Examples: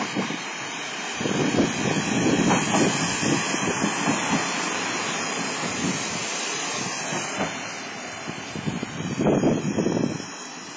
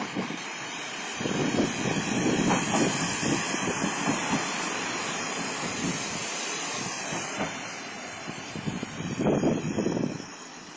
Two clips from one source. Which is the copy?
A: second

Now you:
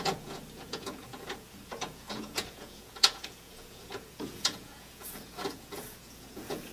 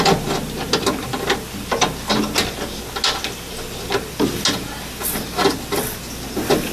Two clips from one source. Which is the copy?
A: first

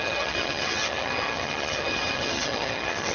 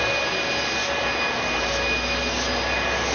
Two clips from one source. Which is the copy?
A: first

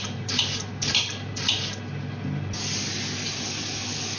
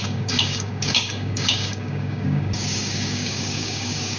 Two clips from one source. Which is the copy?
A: second